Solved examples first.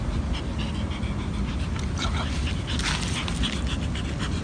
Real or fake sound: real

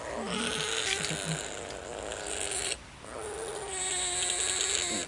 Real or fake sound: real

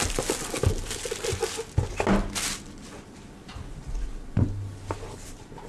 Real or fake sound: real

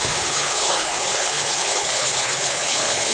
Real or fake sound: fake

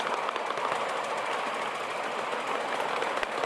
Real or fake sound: real